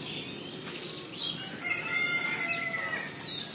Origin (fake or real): real